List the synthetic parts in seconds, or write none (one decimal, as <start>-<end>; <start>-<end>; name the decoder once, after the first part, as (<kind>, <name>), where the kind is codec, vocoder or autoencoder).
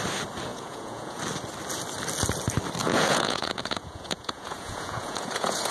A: 0.5-1.2 (vocoder, Vocos); 2.8-5.7